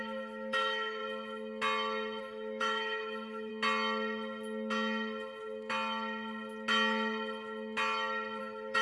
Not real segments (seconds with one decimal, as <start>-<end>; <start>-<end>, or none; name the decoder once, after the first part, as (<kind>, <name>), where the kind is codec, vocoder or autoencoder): 0.0-1.0 (autoencoder, DAC-VAE); 2.2-3.5; 8.4-8.8